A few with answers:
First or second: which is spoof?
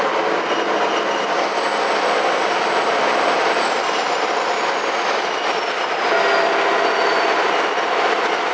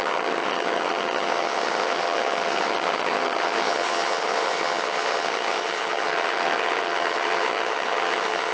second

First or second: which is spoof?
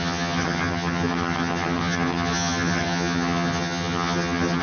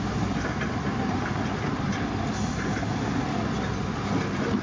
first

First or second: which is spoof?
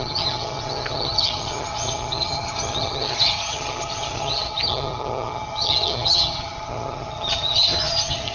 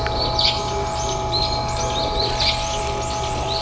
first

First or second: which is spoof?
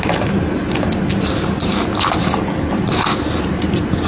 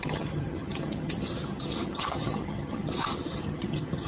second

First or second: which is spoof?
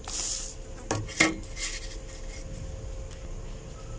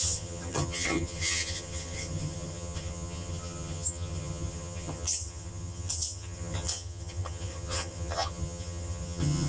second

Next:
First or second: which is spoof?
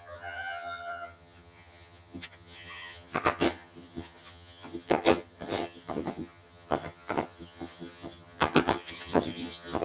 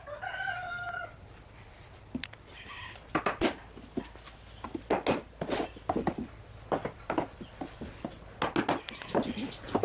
first